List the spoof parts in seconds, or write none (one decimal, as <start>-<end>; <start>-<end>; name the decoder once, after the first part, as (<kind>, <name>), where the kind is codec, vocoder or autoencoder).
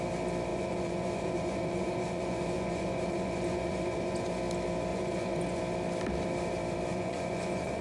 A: 0.5-4.4 (vocoder, Vocos); 4.9-5.6; 6.9-7.8